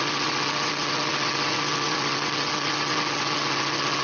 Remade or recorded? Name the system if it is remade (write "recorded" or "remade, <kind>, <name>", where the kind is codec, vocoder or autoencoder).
remade, vocoder, WaveNeXt